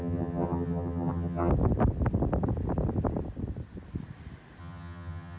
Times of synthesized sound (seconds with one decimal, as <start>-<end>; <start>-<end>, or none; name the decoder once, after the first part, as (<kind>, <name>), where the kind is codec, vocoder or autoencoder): 0.0-1.5 (vocoder, HiFi-GAN); 4.6-5.4